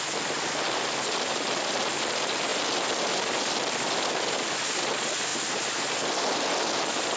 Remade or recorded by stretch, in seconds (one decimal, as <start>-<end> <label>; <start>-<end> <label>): 0.0-7.2 recorded